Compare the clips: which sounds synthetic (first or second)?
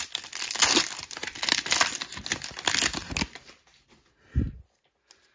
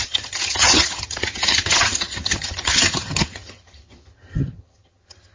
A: second